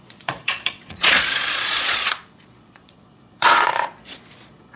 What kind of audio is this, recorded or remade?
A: remade